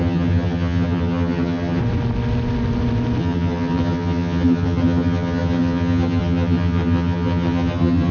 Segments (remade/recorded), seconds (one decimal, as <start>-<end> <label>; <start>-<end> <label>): 0.0-1.8 remade; 1.8-3.2 recorded; 3.2-8.1 remade